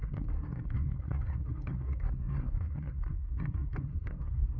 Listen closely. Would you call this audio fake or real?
fake